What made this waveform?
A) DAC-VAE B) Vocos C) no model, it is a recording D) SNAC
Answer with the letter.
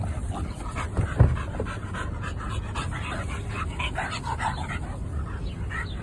C